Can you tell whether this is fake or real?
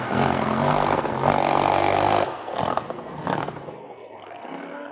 fake